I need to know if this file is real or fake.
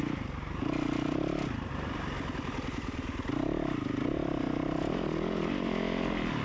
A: real